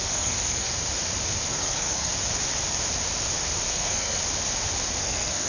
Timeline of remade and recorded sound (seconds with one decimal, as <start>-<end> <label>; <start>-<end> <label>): 0.0-0.7 remade; 0.7-1.5 recorded; 1.5-2.1 remade; 2.1-3.7 recorded; 3.7-4.2 remade; 4.2-5.0 recorded; 5.0-5.5 remade